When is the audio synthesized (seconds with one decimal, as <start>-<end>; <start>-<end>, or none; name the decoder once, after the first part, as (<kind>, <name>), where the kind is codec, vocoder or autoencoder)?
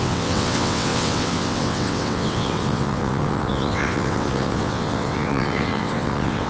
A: 0.0-6.5 (vocoder, WaveNeXt)